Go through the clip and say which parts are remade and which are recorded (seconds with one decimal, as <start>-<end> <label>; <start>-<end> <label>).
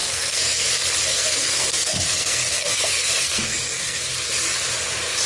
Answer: 0.0-0.7 remade; 0.7-1.1 recorded; 1.1-4.0 remade; 4.0-5.3 recorded